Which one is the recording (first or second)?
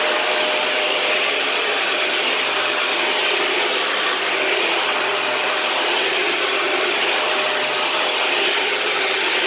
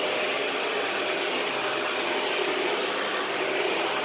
second